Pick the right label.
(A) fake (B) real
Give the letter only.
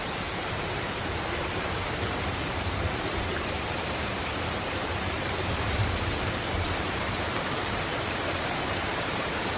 A